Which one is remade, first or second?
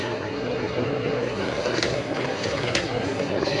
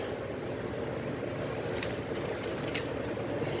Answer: first